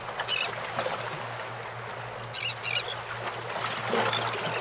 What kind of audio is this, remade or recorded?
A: recorded